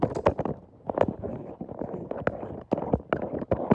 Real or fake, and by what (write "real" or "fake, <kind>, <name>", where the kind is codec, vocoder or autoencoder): real